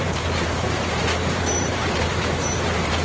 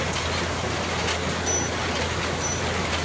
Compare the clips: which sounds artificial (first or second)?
first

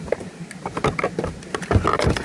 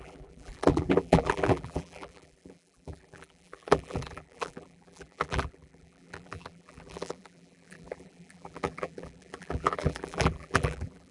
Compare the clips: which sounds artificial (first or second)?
second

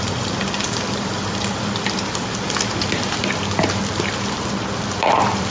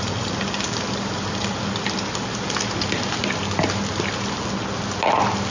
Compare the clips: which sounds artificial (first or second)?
first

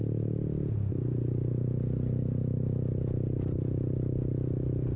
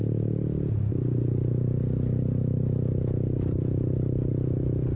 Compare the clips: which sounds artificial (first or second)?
second